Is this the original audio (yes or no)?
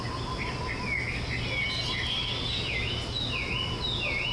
yes